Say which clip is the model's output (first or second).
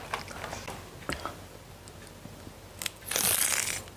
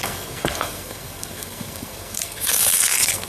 second